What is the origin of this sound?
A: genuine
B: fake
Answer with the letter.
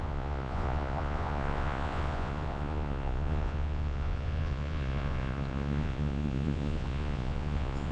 B